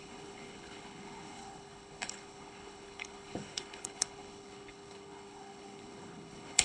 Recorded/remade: remade